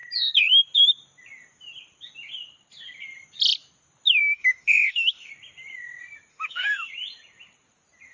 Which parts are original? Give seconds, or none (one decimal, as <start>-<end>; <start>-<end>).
0.0-4.2; 5.3-6.3; 6.9-8.1